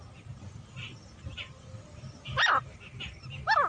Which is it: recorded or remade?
recorded